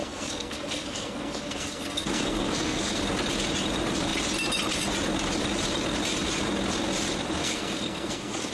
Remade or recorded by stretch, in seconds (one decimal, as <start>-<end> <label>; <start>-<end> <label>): 0.0-3.0 remade; 3.0-7.4 recorded; 7.4-8.5 remade